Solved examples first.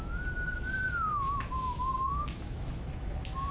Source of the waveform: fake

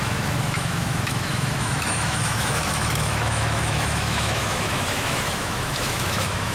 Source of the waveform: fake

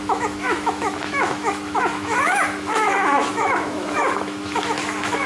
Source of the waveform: fake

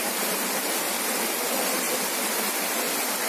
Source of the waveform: real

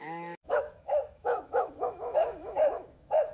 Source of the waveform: fake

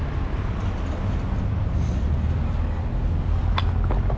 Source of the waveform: real